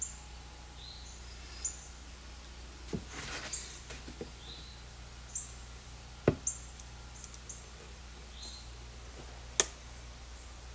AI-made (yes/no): no